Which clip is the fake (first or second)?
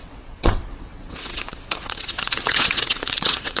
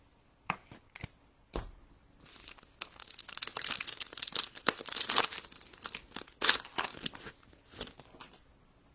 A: first